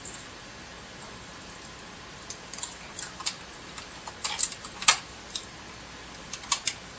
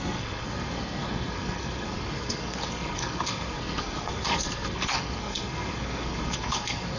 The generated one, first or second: second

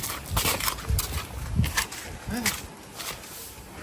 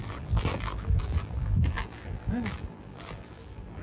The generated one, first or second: second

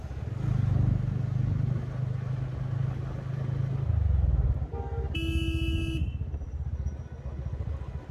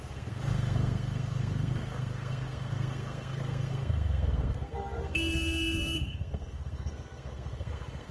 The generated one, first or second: second